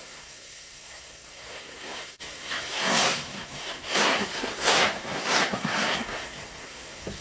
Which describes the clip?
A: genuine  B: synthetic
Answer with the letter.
B